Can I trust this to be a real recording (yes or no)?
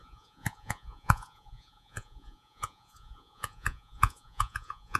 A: no